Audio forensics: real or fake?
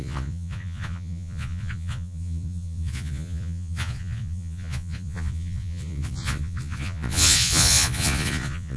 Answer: fake